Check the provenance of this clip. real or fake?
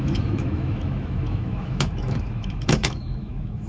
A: fake